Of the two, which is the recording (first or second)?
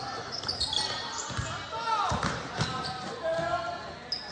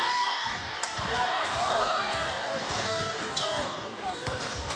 first